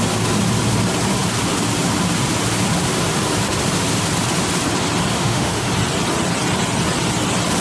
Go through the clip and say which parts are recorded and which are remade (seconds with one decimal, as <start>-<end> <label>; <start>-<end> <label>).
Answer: 0.0-5.1 recorded; 5.1-5.7 remade; 5.7-7.6 recorded

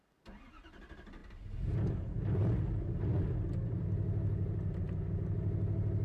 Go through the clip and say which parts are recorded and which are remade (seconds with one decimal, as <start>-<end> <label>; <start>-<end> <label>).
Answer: 0.0-6.0 recorded

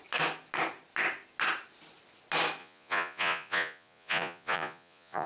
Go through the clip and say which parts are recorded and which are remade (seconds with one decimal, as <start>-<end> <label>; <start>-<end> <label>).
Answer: 0.0-2.6 recorded; 2.6-5.3 remade

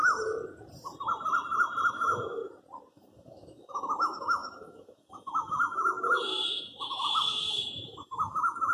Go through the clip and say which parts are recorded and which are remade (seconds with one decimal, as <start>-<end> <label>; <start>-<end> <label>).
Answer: 0.0-1.9 recorded; 1.9-2.4 remade; 2.4-2.9 recorded; 2.9-8.7 remade

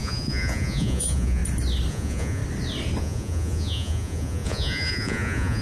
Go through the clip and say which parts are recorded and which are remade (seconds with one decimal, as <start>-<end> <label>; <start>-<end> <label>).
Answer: 0.0-1.4 remade; 1.4-1.9 recorded; 1.9-2.4 remade; 2.4-3.0 recorded; 3.0-5.6 remade

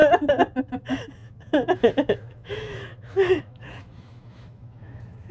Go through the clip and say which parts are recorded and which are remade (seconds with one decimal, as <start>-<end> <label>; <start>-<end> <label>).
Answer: 0.0-0.6 recorded; 0.6-5.3 remade